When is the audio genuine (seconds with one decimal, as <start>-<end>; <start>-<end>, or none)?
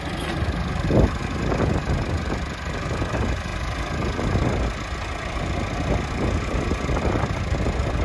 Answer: 0.0-8.0